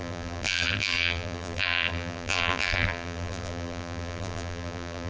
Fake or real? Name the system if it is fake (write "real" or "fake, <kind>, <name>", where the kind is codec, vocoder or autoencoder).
fake, vocoder, BigVGAN v2